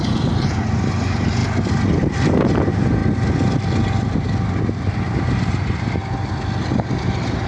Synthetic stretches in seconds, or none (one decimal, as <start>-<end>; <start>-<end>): 0.0-1.4; 2.0-3.0; 4.6-6.0